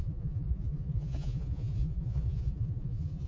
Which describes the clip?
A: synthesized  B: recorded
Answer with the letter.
A